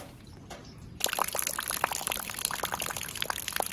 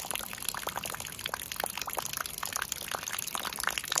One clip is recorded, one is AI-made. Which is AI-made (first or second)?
first